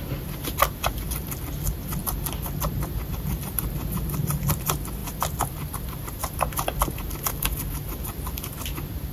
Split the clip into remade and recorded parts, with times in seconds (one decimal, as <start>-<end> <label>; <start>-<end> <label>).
0.0-5.0 recorded; 5.0-7.2 remade; 7.2-9.1 recorded